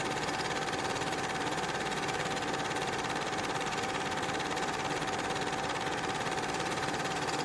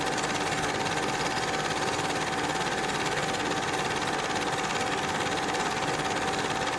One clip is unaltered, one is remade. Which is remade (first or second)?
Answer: first